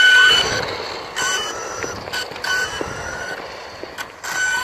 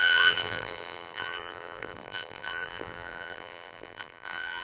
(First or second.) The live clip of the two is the first